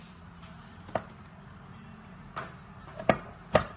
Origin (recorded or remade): remade